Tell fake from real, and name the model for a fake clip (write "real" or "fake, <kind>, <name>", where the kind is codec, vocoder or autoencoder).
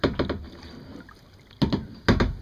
real